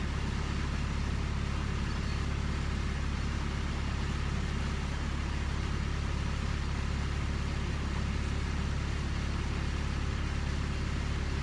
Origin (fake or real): real